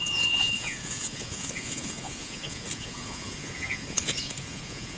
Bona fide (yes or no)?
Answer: no